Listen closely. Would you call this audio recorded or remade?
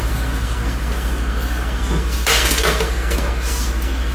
remade